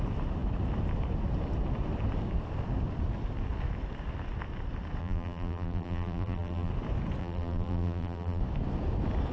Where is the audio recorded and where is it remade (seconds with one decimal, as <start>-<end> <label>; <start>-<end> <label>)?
0.0-5.0 recorded; 5.0-6.7 remade; 6.7-7.2 recorded; 7.2-8.4 remade; 8.4-9.3 recorded